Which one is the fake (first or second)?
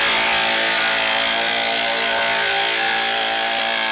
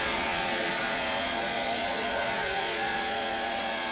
second